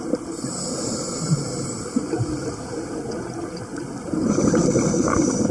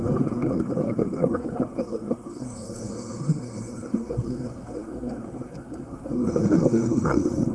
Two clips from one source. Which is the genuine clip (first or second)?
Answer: first